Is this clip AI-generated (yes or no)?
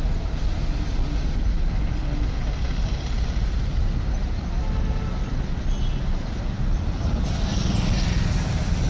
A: no